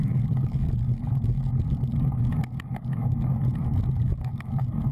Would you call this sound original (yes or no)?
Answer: no